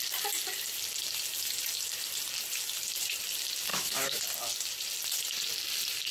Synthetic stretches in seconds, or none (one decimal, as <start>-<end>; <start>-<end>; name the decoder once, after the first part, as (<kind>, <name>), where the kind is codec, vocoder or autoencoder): 3.7-4.2 (autoencoder, DAC-VAE)